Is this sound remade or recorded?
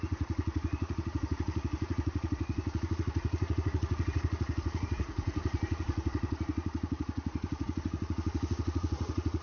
remade